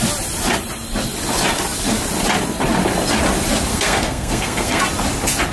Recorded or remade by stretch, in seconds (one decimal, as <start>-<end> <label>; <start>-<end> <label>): 0.0-3.7 recorded; 3.7-4.8 remade; 4.8-5.5 recorded

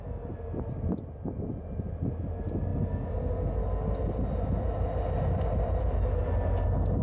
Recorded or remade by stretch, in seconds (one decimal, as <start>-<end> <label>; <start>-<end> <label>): 0.0-7.0 recorded

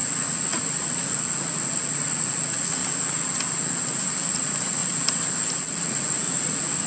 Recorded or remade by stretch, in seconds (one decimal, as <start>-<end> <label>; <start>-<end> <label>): 0.0-2.8 remade; 2.8-4.3 recorded; 4.3-4.8 remade; 4.8-5.6 recorded; 5.6-6.9 remade

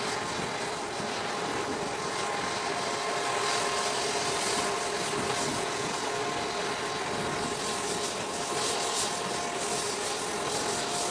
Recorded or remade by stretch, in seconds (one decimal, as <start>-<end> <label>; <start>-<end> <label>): 0.0-5.5 recorded; 5.5-6.2 remade; 6.2-11.1 recorded